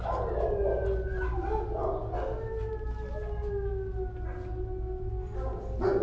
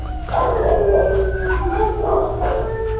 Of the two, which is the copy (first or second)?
second